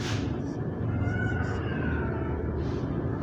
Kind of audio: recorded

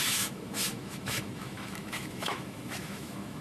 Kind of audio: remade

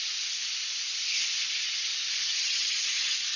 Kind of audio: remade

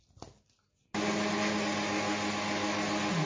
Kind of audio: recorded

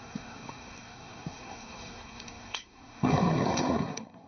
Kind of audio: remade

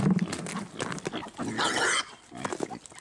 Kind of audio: recorded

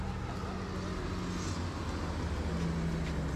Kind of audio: recorded